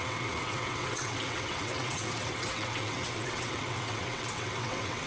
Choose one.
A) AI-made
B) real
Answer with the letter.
A